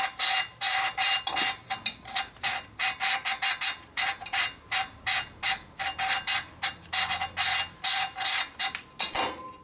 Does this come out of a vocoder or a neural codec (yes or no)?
no